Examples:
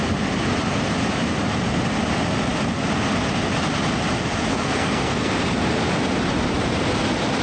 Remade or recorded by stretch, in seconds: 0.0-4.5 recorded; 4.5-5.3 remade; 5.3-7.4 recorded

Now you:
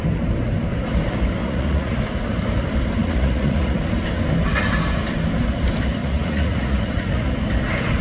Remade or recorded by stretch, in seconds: 0.0-1.4 recorded; 1.4-2.0 remade; 2.0-3.0 recorded; 3.0-3.8 remade; 3.8-6.0 recorded; 6.0-7.3 remade; 7.3-8.0 recorded

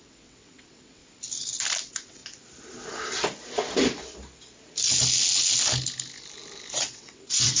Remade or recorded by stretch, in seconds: 0.0-1.0 remade; 1.0-1.8 recorded; 1.8-2.2 remade; 2.2-6.8 recorded; 6.8-7.6 remade

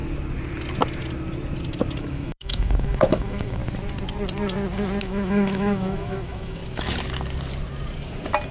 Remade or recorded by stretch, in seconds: 0.0-2.0 recorded; 2.0-3.6 remade; 3.6-5.0 recorded; 5.0-6.6 remade; 6.6-8.5 recorded

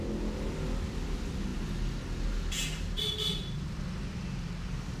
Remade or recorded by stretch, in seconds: 0.0-5.0 recorded

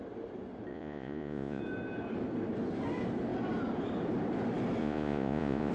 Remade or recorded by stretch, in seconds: 0.0-0.7 recorded; 0.7-1.6 remade; 1.6-4.8 recorded; 4.8-5.7 remade